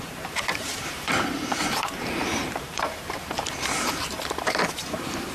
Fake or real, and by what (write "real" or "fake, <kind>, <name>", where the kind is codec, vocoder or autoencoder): fake, vocoder, BigVGAN v2